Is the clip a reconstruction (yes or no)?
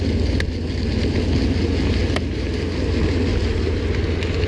no